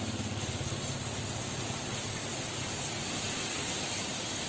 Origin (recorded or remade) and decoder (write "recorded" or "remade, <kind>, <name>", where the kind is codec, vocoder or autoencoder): recorded